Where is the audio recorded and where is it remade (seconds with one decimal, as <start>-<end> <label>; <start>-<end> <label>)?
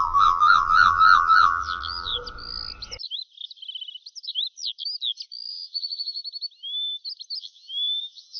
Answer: 0.0-2.1 remade; 2.1-5.5 recorded; 5.5-6.2 remade; 6.2-7.4 recorded; 7.4-8.4 remade